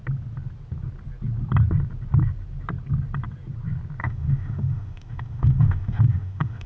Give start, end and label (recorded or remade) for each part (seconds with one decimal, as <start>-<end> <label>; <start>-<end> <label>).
0.0-4.0 recorded; 4.0-6.7 remade